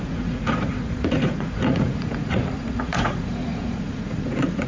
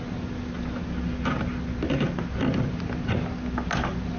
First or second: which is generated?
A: first